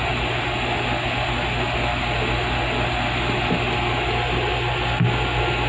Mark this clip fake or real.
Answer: real